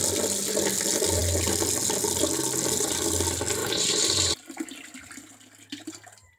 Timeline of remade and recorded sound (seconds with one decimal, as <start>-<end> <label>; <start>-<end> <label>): 0.0-3.6 recorded; 3.6-4.3 remade; 4.3-6.4 recorded

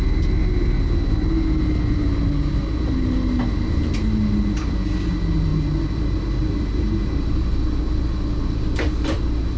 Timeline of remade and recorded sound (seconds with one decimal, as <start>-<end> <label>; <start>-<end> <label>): 0.0-9.6 recorded

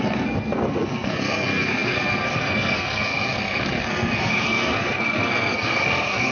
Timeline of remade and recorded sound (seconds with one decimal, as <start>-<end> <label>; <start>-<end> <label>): 0.0-6.3 remade